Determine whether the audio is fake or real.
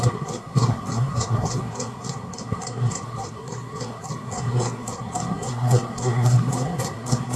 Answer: fake